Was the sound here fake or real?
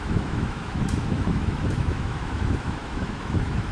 fake